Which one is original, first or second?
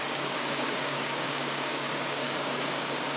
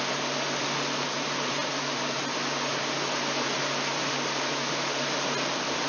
second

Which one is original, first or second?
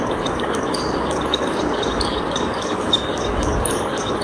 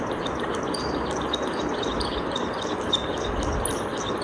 second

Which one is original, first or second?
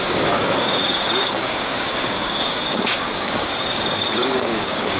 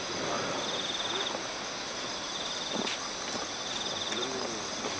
second